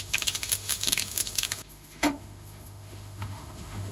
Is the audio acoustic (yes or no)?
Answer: no